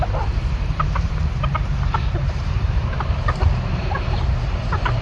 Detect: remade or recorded remade